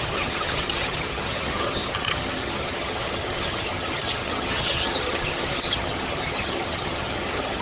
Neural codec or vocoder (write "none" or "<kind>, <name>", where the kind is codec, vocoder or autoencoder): vocoder, HiFi-GAN